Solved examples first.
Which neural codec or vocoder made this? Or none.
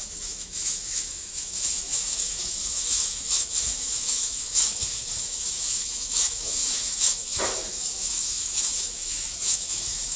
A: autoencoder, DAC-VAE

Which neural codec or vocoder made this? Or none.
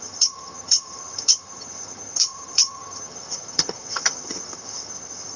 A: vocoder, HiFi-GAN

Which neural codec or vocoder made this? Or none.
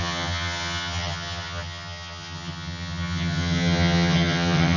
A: vocoder, HiFi-GAN